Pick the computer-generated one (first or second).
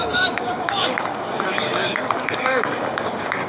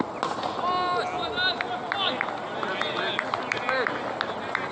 first